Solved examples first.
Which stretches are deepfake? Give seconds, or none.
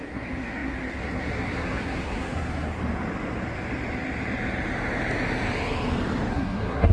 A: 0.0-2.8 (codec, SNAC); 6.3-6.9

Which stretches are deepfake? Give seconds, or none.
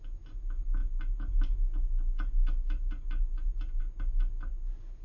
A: none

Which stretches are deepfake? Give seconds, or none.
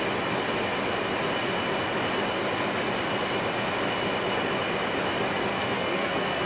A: 5.5-6.5 (codec, SNAC)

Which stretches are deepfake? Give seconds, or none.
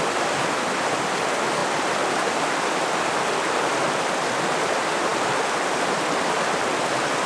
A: none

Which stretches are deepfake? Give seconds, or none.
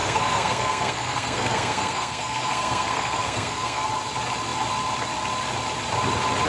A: 0.0-3.9 (codec, SNAC)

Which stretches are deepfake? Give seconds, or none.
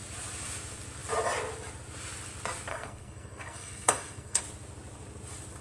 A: 2.7-4.4 (codec, SNAC)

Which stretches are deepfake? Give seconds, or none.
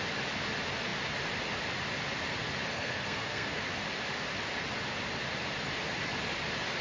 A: 2.7-3.6 (codec, SNAC)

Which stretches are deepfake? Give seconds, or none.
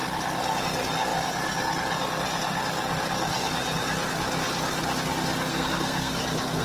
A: 5.5-6.1 (codec, SNAC)